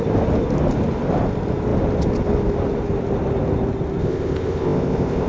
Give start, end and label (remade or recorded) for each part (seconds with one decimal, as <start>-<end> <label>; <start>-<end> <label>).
0.0-4.0 recorded; 4.0-5.3 remade